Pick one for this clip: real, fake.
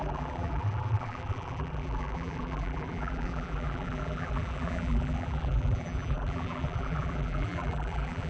fake